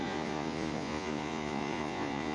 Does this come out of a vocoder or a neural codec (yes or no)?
yes